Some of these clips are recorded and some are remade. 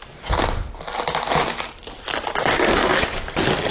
recorded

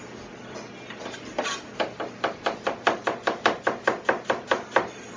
recorded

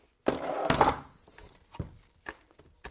recorded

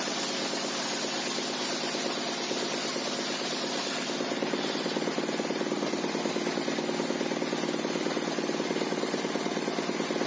recorded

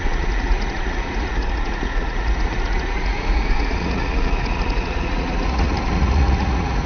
remade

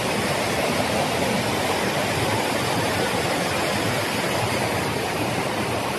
remade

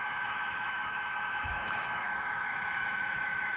remade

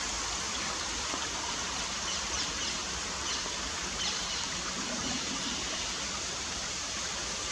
remade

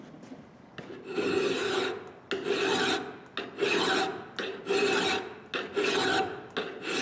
recorded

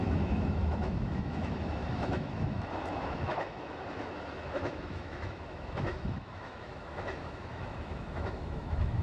remade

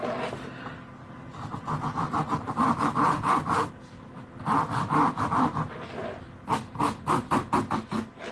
recorded